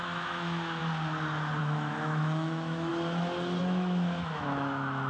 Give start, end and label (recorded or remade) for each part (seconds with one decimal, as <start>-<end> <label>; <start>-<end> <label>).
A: 0.0-0.8 remade; 0.8-1.6 recorded; 1.6-2.9 remade; 2.9-3.6 recorded; 3.6-5.1 remade